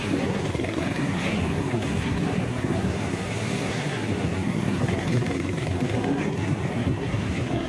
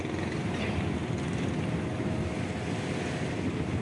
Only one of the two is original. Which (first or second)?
second